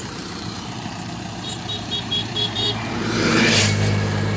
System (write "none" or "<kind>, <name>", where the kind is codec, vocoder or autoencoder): vocoder, BigVGAN v2